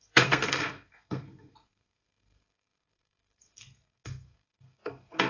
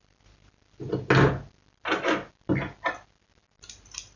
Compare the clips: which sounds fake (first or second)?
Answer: first